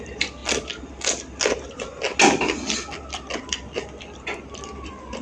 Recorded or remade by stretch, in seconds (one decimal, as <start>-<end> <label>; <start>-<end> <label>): 0.0-5.2 recorded